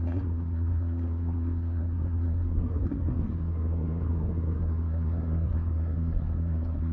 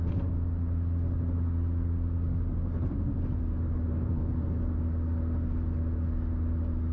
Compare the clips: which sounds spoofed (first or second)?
first